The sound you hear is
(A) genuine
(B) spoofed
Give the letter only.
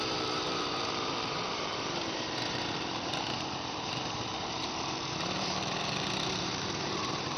B